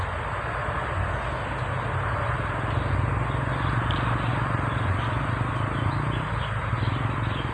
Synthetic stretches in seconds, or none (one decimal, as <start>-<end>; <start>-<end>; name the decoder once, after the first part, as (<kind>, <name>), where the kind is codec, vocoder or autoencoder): none